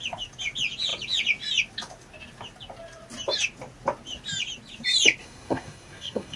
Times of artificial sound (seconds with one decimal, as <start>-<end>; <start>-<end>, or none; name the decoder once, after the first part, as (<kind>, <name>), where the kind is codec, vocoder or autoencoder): 5.2-6.4 (codec, SNAC)